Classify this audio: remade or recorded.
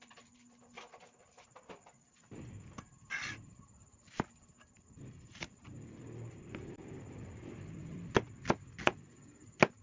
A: recorded